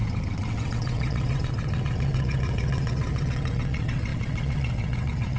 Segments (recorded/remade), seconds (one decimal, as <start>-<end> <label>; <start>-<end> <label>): 0.0-5.4 remade